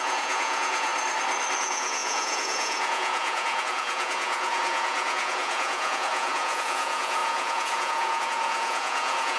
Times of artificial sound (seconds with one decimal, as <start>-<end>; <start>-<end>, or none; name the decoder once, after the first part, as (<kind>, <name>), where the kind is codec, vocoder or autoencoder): 0.0-0.9 (vocoder, Vocos); 1.6-9.4